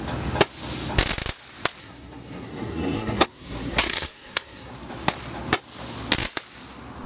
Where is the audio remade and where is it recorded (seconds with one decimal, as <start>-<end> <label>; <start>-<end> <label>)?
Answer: 0.0-1.8 recorded; 1.8-4.7 remade; 4.7-7.1 recorded